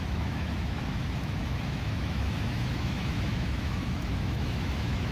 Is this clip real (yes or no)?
no